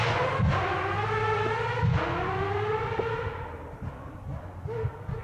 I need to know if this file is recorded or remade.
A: recorded